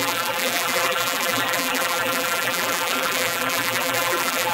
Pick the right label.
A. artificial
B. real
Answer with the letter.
A